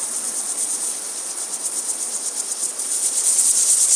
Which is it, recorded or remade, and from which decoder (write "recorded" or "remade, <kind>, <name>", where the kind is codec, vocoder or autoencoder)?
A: remade, vocoder, Vocos